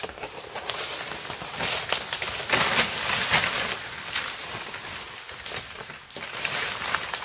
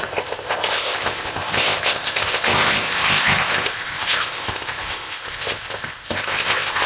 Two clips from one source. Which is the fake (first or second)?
second